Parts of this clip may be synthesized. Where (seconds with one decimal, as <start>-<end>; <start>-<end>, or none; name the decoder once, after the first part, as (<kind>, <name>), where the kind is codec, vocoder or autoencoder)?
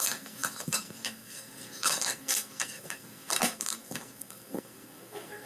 0.0-5.5 (codec, SNAC)